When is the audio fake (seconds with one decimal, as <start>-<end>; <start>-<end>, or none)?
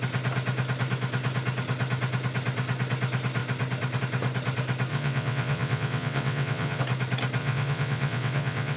4.9-6.8; 7.4-8.8